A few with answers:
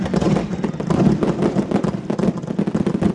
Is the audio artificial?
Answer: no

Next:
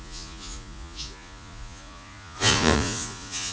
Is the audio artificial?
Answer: yes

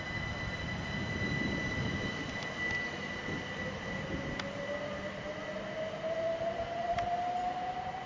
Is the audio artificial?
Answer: no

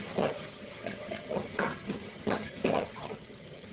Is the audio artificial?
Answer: yes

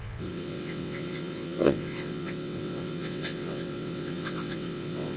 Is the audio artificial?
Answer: yes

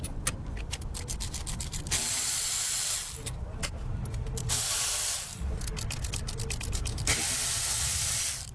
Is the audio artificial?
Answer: no